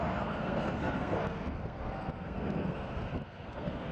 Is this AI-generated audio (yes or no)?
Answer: yes